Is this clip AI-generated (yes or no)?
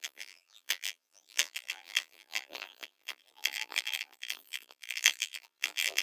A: yes